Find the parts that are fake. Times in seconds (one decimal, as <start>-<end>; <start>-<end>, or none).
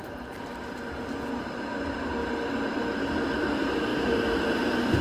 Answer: 3.9-4.4